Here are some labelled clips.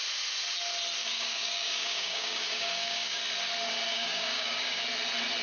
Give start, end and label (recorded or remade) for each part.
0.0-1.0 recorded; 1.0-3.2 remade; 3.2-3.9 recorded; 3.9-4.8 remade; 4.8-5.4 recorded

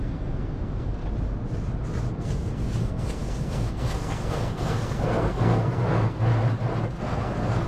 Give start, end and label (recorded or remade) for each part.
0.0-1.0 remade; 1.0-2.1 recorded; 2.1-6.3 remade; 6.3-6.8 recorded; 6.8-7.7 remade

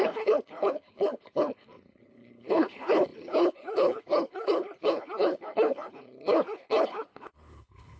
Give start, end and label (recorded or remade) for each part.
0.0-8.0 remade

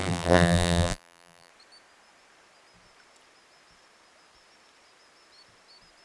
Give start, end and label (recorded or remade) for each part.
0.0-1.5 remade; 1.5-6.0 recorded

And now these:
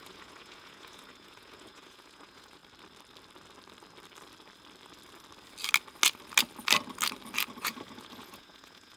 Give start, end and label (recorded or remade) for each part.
0.0-2.6 remade; 2.6-7.6 recorded; 7.6-9.0 remade

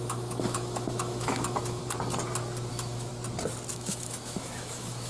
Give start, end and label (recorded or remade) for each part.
0.0-1.8 remade; 1.8-2.7 recorded; 2.7-3.1 remade; 3.1-3.7 recorded; 3.7-5.1 remade

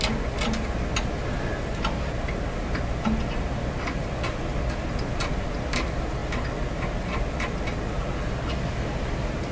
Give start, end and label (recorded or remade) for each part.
0.0-9.5 recorded

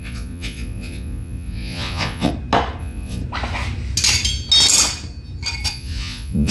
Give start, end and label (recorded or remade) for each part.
0.0-2.3 remade; 2.3-2.8 recorded; 2.8-3.2 remade; 3.2-5.7 recorded; 5.7-6.5 remade